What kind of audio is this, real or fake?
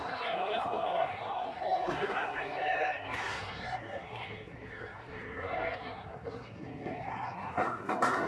fake